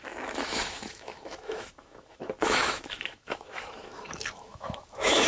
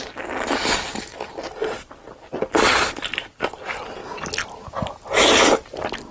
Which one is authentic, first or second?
second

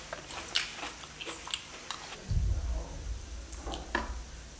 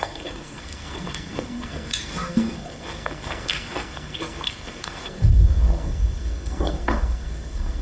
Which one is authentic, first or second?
first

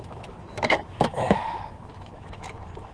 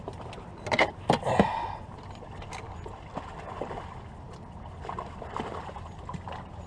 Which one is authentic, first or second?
second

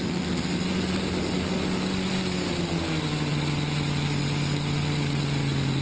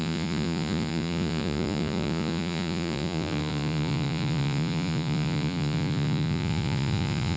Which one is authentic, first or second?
first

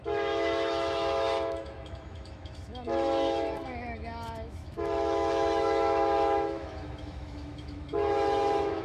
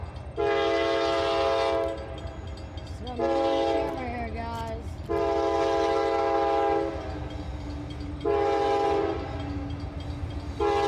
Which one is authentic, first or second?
second